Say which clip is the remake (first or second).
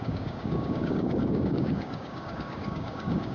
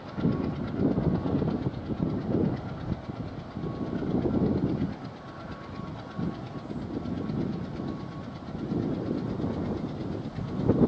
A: first